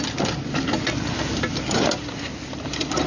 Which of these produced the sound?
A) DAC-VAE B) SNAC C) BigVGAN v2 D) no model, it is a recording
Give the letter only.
D